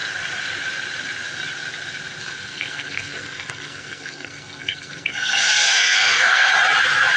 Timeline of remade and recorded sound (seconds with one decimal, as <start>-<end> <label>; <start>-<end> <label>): 0.0-2.2 recorded; 2.2-6.5 remade; 6.5-7.2 recorded